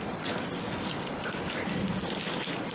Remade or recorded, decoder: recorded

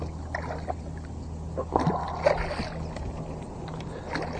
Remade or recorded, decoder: recorded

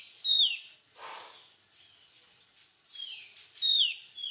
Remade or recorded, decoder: recorded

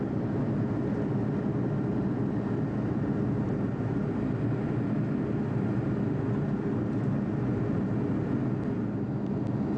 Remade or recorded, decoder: recorded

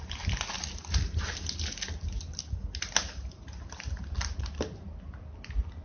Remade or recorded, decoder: recorded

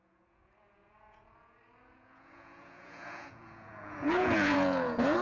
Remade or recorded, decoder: remade, vocoder, Vocos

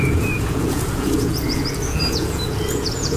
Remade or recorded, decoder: remade, vocoder, Vocos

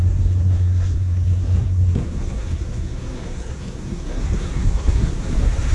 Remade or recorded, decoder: remade, codec, SNAC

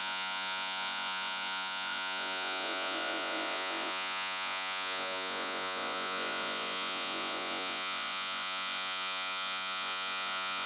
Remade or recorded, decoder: remade, vocoder, Vocos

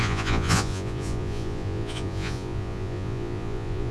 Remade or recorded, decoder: remade, vocoder, Vocos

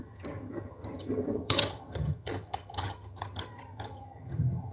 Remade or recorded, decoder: remade, vocoder, HiFi-GAN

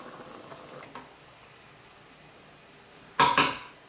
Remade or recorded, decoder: recorded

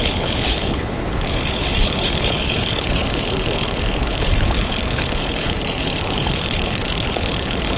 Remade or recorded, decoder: remade, codec, HILCodec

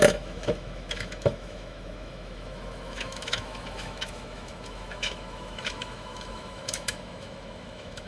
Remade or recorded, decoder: remade, autoencoder, DAC-VAE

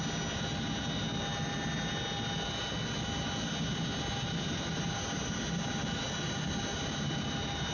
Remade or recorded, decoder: recorded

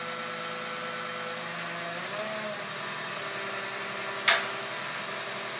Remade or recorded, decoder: recorded